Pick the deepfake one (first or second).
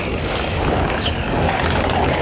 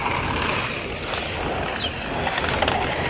first